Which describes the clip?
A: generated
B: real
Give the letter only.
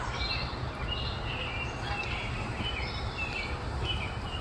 B